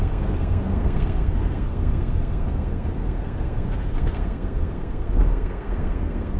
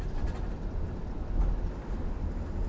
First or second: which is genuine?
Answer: second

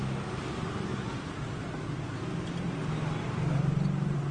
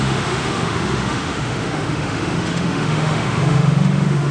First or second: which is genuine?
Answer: first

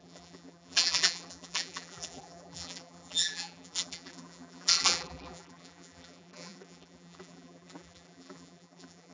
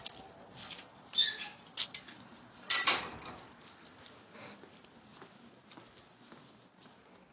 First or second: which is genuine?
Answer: second